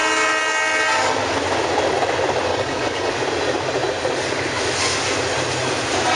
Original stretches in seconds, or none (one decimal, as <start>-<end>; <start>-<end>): 0.0-2.5; 3.1-6.2